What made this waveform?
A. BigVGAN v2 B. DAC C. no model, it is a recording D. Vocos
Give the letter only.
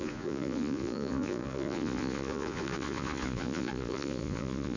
D